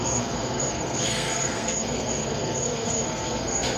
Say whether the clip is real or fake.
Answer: fake